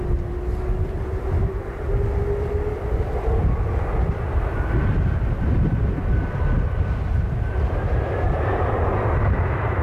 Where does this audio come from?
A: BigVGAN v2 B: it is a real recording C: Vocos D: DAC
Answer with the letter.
B